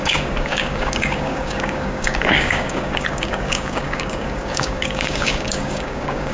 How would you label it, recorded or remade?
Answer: remade